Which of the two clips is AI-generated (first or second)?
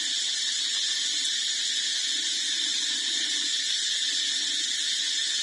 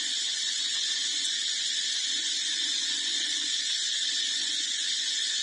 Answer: second